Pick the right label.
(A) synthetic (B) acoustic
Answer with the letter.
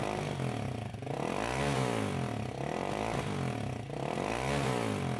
B